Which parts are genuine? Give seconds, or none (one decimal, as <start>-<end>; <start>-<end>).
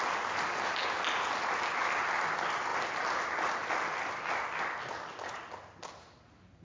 0.0-6.6